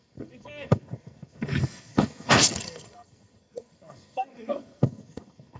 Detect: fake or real fake